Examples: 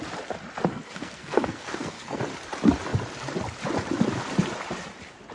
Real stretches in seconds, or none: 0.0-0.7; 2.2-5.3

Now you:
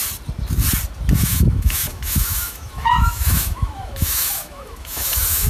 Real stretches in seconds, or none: 0.0-1.2